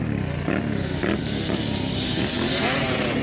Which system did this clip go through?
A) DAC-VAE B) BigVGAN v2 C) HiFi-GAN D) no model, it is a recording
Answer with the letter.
B